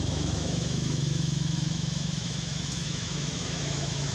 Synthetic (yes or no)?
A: yes